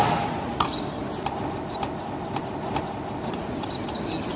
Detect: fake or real real